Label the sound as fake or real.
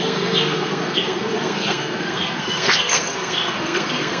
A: fake